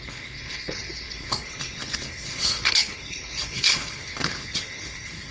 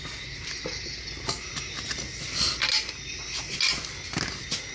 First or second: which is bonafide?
second